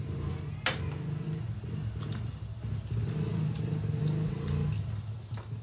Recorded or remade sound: recorded